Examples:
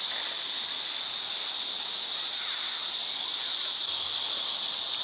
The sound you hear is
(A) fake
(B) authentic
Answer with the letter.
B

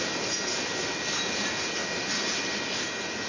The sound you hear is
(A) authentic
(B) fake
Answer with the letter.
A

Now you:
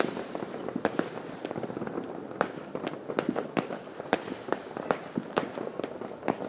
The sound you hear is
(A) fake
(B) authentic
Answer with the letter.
B